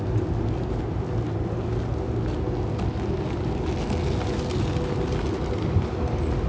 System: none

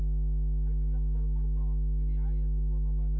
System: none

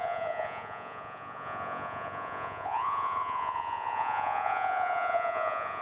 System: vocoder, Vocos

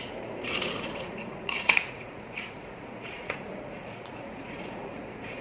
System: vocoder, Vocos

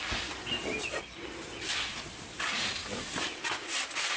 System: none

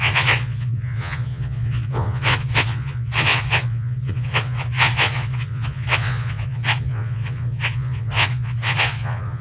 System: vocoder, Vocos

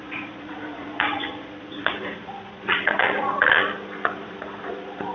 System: vocoder, Vocos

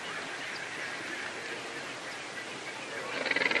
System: none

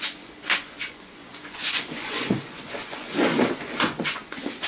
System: vocoder, Vocos